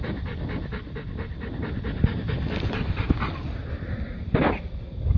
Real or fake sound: real